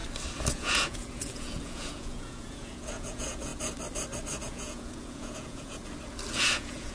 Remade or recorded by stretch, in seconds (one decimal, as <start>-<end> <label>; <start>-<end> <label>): 0.0-0.5 recorded; 0.5-3.5 remade; 3.5-4.4 recorded; 4.4-5.8 remade; 5.8-6.3 recorded; 6.3-6.9 remade